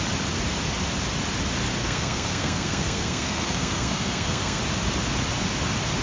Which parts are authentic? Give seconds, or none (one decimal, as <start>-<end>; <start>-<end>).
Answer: 0.0-1.8; 4.6-6.0